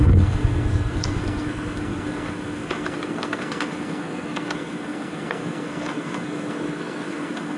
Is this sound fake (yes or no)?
yes